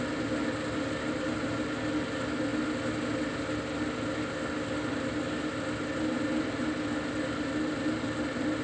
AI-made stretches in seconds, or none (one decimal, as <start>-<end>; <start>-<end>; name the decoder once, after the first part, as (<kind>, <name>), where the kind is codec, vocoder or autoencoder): none